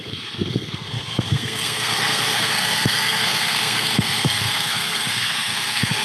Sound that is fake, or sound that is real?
fake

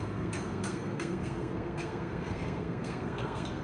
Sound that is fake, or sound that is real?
fake